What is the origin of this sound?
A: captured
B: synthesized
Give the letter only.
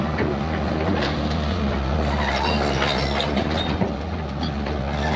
B